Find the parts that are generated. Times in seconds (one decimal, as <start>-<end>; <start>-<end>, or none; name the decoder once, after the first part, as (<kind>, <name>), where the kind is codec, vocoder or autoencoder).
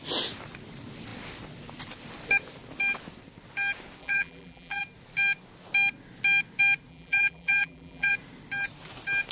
4.0-4.8 (vocoder, BigVGAN v2); 6.9-8.1